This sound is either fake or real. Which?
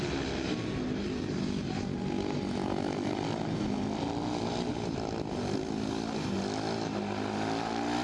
real